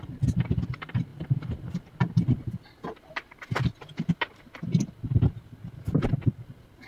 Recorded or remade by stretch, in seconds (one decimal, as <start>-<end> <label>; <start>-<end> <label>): 0.0-6.9 recorded